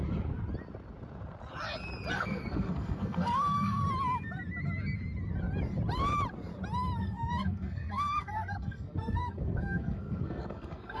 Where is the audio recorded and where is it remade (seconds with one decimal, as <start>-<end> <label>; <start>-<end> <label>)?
0.0-2.1 recorded; 2.1-3.8 remade; 3.8-7.0 recorded; 7.0-11.0 remade